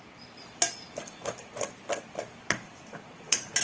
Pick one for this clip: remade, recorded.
remade